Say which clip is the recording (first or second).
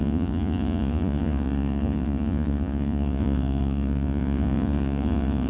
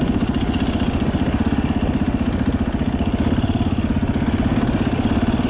second